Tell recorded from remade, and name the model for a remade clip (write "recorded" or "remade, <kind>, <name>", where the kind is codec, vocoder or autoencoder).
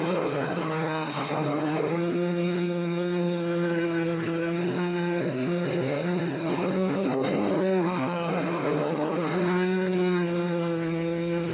remade, codec, SNAC